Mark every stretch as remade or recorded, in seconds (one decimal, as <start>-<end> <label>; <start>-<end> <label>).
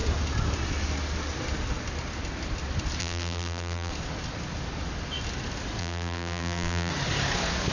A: 0.0-3.0 recorded; 3.0-3.9 remade; 3.9-5.8 recorded; 5.8-6.9 remade; 6.9-7.7 recorded